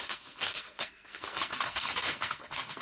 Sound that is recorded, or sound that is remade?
remade